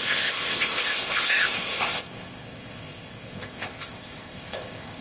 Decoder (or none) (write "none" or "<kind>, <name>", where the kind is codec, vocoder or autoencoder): codec, ZipCodec